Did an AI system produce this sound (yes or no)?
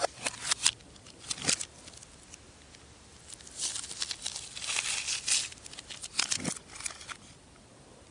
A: no